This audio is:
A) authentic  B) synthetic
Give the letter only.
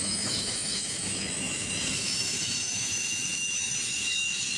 B